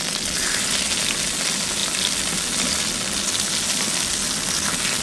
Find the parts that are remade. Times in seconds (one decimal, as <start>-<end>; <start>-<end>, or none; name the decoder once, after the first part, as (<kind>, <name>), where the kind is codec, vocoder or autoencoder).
none